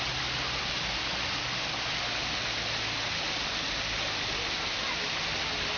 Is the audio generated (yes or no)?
no